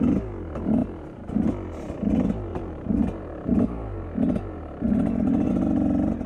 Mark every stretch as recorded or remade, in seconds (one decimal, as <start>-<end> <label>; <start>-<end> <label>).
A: 0.0-2.5 recorded; 2.5-5.5 remade; 5.5-6.3 recorded